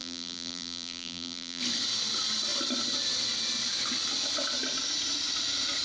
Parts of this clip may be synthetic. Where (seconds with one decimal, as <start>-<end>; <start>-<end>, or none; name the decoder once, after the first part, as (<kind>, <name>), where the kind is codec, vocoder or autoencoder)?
0.0-1.6 (vocoder, BigVGAN v2)